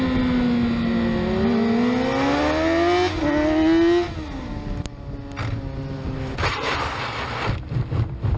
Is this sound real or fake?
real